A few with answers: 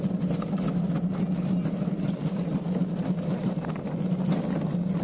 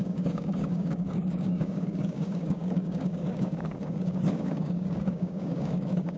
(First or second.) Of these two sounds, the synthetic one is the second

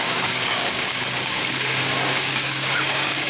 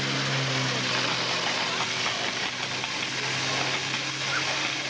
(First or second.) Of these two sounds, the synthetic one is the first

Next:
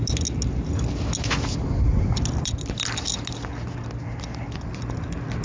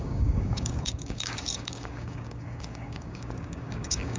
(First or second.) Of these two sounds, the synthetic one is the second